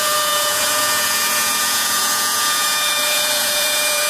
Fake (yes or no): yes